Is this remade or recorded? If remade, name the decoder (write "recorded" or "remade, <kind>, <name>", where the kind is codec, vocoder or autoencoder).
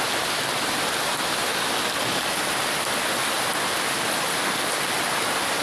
recorded